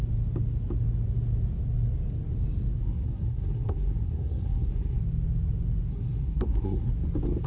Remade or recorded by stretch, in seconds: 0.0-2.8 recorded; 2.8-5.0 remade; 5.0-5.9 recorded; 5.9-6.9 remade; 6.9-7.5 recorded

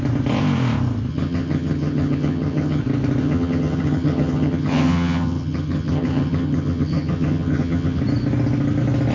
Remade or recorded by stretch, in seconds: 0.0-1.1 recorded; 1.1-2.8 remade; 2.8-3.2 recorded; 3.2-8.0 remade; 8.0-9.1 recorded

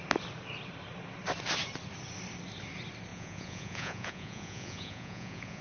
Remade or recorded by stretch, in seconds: 0.0-3.1 recorded; 3.1-5.6 remade

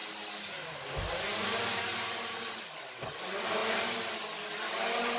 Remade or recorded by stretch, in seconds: 0.0-5.2 recorded

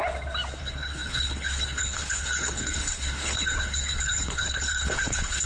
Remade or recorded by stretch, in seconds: 0.0-0.6 recorded; 0.6-5.5 remade

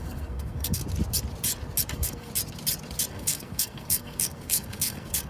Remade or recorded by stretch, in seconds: 0.0-0.8 remade; 0.8-1.9 recorded; 1.9-2.3 remade; 2.3-3.1 recorded; 3.1-5.3 remade

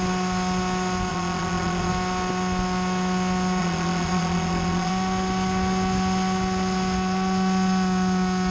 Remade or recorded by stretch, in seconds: 0.0-1.1 recorded; 1.1-1.9 remade; 1.9-3.6 recorded; 3.6-4.9 remade; 4.9-8.5 recorded

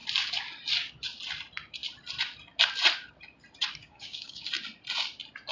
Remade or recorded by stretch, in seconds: 0.0-3.8 recorded; 3.8-4.5 remade; 4.5-5.5 recorded